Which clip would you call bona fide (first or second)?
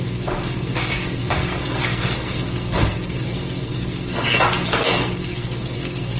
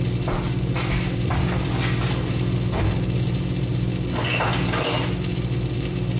second